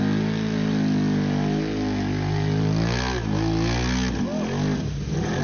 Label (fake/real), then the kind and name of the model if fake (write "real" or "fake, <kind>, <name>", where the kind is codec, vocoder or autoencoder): real